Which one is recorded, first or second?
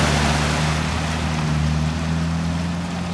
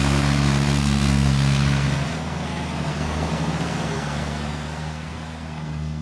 first